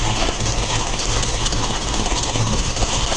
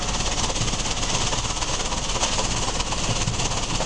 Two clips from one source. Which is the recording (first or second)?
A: second